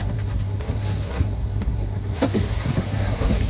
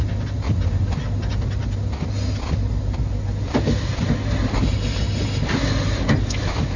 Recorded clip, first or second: second